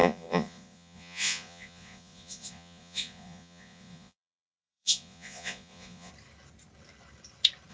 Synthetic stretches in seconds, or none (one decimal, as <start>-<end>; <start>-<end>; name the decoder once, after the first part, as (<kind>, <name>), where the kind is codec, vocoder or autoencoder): 0.0-6.1 (vocoder, Vocos)